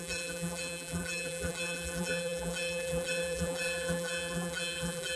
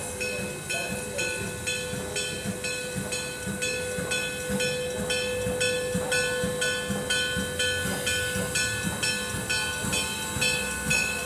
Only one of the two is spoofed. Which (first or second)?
first